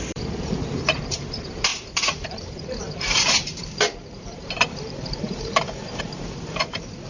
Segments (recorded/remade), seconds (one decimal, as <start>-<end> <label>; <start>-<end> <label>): 0.0-7.1 remade